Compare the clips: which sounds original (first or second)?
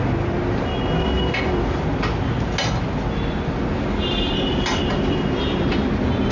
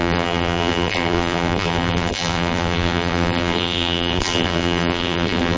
first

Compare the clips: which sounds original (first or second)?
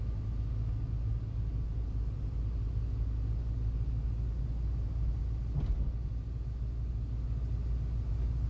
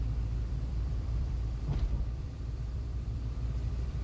first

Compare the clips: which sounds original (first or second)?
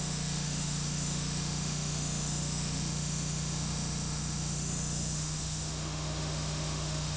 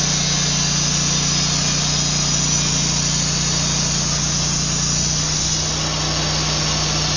second